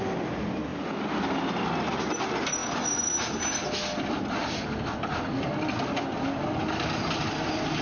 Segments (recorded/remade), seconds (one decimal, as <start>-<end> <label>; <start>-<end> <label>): 0.0-7.8 recorded